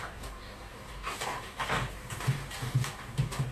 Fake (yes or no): yes